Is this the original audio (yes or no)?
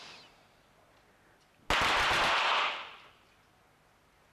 yes